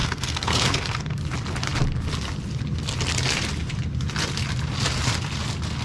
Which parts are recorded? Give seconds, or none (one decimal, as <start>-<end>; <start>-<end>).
1.2-5.8